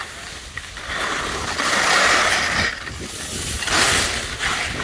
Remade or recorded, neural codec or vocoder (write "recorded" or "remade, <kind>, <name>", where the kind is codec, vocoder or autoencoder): recorded